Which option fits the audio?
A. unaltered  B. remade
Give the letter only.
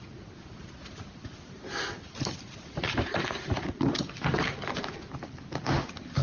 A